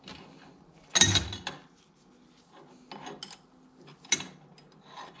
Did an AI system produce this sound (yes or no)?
no